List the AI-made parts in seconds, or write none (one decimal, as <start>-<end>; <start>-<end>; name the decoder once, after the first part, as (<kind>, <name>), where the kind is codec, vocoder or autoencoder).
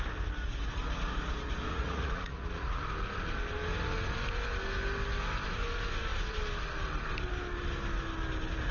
1.7-2.8 (vocoder, Vocos)